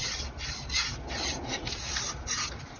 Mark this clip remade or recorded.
recorded